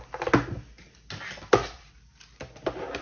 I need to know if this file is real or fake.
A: real